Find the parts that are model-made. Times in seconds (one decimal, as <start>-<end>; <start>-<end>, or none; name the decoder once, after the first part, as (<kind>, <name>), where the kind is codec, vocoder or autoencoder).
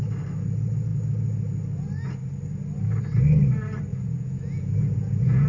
3.9-5.5 (vocoder, Vocos)